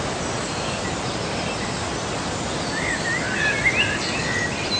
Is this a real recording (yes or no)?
yes